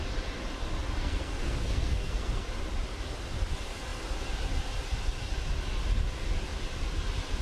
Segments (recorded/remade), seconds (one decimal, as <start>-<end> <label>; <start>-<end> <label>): 0.0-1.0 recorded; 1.0-2.5 remade; 2.5-7.4 recorded